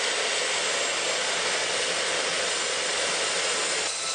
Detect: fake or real real